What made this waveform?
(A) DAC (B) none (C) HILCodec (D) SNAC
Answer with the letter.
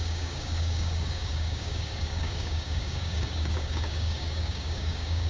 A